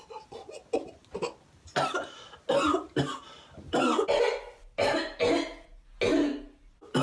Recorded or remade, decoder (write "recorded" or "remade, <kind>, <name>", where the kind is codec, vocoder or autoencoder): recorded